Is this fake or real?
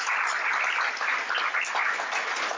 real